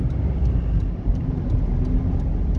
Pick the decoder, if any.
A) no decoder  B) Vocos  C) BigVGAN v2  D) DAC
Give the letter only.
A